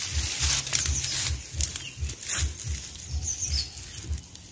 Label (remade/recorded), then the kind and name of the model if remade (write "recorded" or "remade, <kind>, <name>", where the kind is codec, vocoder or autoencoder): recorded